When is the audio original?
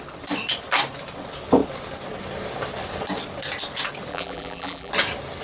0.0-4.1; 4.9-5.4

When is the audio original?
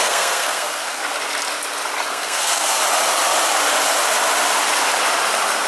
1.0-2.1; 2.8-5.7